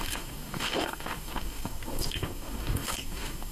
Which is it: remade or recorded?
remade